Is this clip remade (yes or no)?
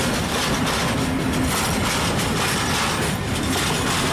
no